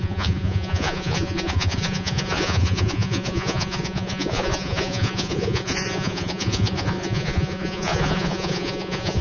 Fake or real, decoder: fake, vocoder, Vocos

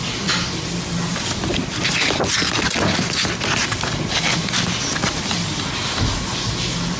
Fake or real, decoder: real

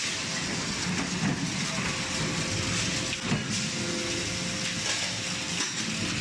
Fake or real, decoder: real